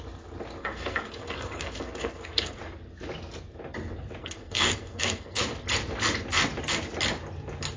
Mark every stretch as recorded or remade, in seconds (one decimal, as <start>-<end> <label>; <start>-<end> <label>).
0.0-0.6 recorded; 0.6-2.6 remade; 2.6-4.2 recorded; 4.2-5.4 remade; 5.4-7.8 recorded